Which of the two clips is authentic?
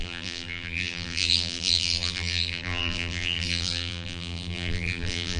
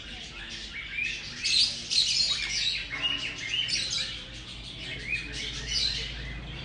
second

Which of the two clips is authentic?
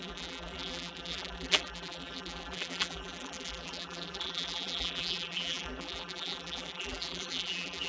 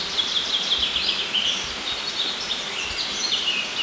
second